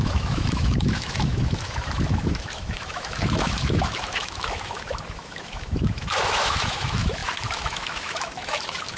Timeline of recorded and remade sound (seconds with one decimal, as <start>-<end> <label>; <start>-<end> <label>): 0.0-9.0 remade